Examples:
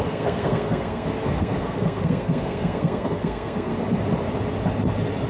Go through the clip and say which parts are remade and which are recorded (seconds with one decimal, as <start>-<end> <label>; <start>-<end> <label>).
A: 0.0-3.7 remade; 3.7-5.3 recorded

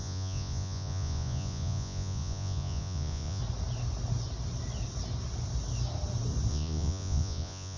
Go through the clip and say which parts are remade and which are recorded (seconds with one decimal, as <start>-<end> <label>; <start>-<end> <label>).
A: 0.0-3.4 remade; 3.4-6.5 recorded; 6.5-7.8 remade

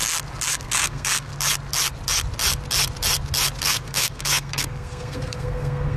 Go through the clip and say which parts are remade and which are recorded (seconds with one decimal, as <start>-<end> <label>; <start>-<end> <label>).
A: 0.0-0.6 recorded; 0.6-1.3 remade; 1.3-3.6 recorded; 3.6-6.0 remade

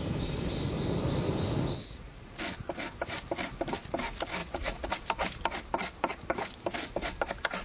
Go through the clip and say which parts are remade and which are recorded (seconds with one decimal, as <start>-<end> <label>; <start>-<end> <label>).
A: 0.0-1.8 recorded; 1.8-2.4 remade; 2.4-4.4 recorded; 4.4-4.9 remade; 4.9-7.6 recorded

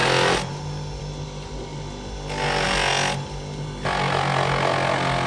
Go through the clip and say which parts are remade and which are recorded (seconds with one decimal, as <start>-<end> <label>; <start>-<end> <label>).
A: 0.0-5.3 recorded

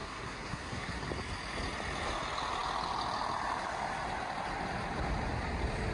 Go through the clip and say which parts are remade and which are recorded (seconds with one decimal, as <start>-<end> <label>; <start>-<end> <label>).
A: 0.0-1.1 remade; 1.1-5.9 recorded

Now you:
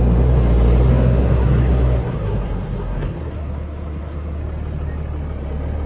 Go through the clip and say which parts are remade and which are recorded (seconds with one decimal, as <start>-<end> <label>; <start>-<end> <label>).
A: 0.0-0.9 recorded; 0.9-4.4 remade; 4.4-5.9 recorded